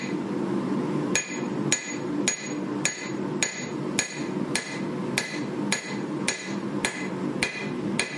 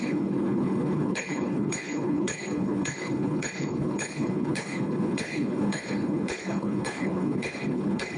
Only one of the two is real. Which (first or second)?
first